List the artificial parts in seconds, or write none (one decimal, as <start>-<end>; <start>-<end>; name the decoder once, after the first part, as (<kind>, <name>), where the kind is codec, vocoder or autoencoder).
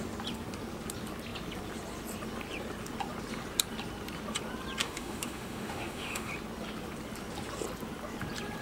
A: 4.8-6.3 (autoencoder, DAC-VAE)